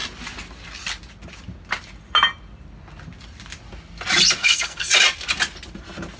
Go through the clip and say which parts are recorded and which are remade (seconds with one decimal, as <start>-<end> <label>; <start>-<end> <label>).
0.0-4.4 recorded; 4.4-4.9 remade; 4.9-6.2 recorded